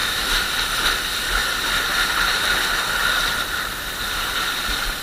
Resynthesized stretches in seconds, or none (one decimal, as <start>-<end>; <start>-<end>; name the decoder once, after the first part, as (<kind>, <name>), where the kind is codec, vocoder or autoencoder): 0.0-0.5 (autoencoder, DAC-VAE)